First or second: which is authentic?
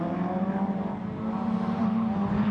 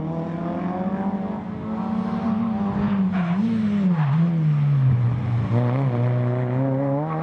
second